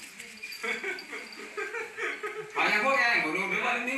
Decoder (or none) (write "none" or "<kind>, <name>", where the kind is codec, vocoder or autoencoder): none